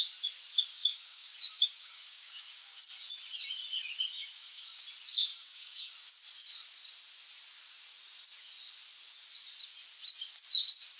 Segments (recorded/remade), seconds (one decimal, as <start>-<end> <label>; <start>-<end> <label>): 0.0-0.7 recorded; 0.7-2.8 remade; 2.8-4.1 recorded; 4.1-4.8 remade; 4.8-5.3 recorded; 5.3-5.9 remade; 5.9-11.0 recorded